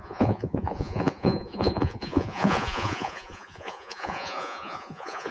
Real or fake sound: fake